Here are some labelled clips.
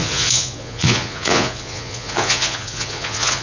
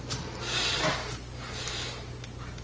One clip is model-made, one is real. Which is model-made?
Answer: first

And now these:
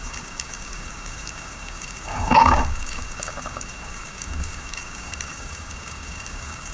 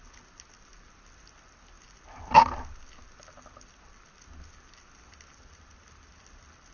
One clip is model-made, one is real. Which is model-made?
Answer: first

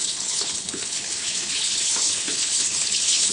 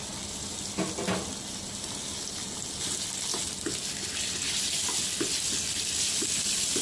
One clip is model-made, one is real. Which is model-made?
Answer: first